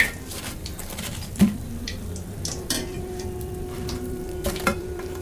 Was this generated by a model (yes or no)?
yes